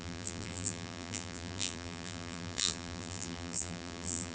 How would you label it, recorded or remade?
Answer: remade